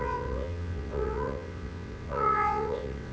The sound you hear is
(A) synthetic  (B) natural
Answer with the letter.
A